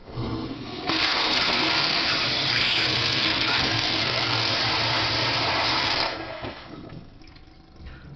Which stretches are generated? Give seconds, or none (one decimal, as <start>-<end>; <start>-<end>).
0.0-2.1; 2.5-4.5; 5.8-7.2